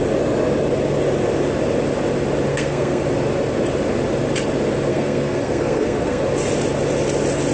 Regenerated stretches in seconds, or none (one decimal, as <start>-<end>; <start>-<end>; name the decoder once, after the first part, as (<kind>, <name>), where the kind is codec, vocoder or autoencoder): 2.5-3.0 (codec, SNAC); 4.9-6.2